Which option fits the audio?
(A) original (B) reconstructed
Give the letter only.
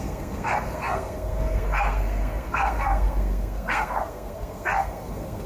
B